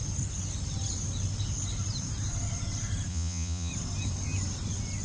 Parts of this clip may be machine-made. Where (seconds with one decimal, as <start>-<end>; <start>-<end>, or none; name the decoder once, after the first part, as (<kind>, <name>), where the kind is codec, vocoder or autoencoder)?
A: 3.1-3.7 (vocoder, Vocos)